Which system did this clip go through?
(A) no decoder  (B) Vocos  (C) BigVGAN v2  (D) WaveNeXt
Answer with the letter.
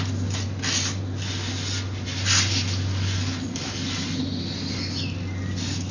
A